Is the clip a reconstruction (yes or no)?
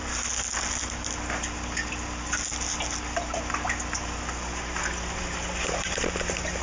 no